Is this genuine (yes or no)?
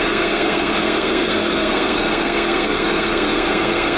no